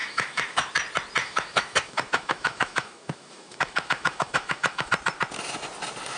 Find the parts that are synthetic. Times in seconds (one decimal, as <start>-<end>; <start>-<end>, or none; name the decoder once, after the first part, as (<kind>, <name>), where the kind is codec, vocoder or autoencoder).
0.0-0.7 (autoencoder, DAC-VAE); 1.2-4.9